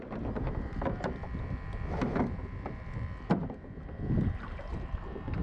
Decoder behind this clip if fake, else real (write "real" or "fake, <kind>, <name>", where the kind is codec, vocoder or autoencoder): fake, vocoder, BigVGAN v2